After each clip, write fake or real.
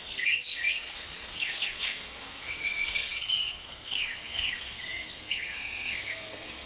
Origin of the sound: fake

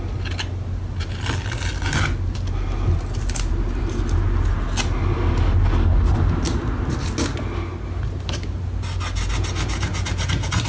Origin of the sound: real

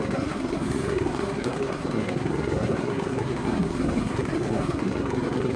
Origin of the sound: fake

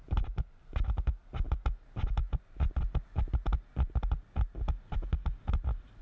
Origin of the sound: real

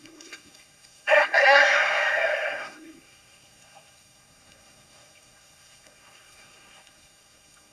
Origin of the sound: fake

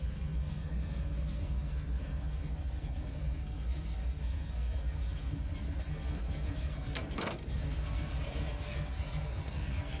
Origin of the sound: fake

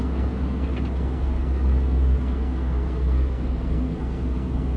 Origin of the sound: fake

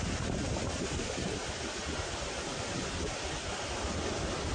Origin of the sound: real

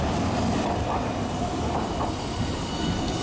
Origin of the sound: real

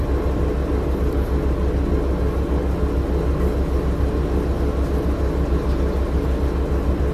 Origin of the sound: real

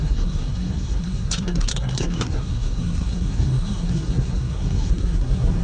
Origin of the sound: fake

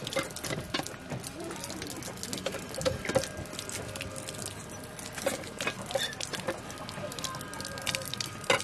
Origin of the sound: real